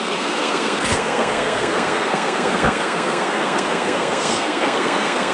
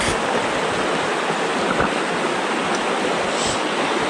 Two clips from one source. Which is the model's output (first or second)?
first